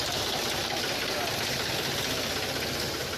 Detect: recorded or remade recorded